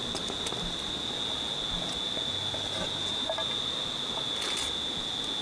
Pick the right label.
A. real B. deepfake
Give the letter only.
A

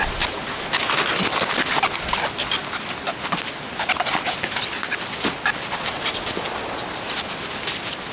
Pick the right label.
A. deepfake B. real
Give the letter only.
B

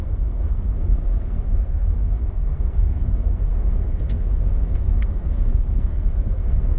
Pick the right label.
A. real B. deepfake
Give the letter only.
B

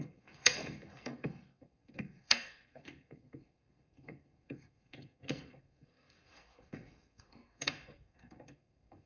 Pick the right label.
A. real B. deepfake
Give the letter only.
B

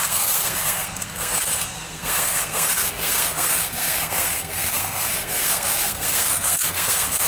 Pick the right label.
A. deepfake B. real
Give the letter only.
A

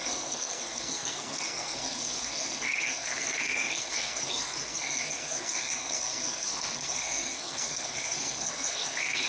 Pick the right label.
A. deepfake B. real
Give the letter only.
A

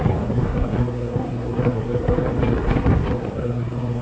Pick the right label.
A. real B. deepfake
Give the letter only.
B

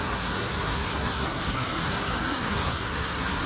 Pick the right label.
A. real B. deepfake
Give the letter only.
B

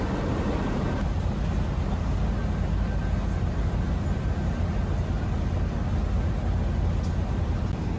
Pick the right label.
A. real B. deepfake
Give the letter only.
A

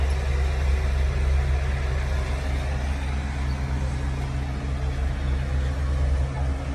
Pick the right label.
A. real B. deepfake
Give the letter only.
A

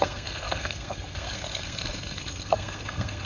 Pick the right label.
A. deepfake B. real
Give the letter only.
A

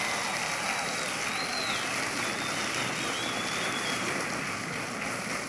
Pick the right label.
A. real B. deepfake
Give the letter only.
A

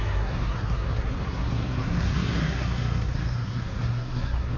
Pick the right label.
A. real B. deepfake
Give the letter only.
B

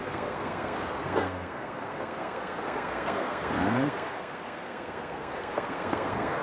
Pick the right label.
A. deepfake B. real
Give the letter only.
A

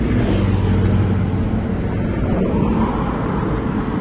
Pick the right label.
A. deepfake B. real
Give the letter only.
B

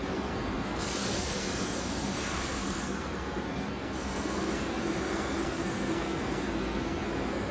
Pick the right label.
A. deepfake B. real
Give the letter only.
A